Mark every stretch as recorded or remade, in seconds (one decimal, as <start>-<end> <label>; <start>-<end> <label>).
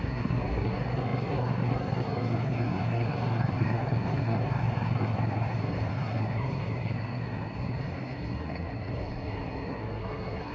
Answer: 0.0-10.5 remade